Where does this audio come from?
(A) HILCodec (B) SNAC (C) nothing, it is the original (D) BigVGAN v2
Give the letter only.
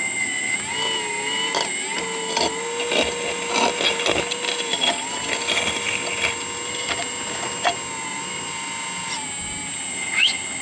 C